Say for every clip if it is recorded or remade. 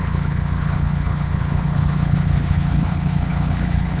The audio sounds remade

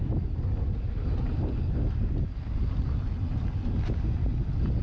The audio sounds recorded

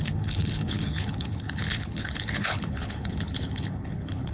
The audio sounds remade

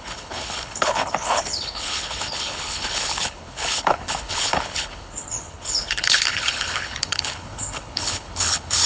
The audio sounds remade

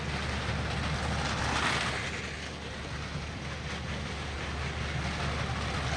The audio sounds recorded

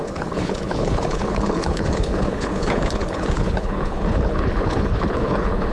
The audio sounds remade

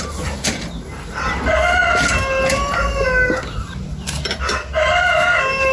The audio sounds recorded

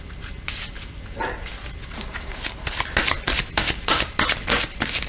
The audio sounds recorded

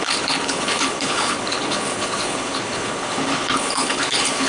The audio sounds remade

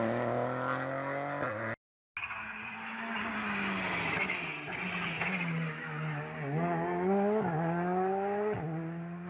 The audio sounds recorded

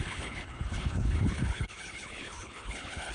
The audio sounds remade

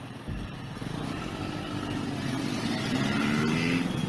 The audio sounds recorded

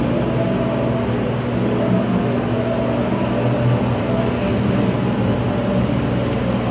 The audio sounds recorded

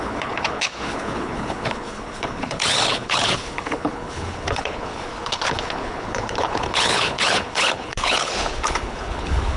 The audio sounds remade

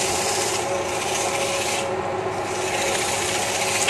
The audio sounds recorded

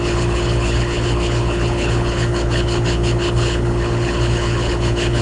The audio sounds remade